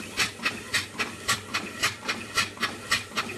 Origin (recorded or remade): remade